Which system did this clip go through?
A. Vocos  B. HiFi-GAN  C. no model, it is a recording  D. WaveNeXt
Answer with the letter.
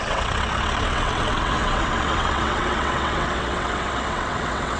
D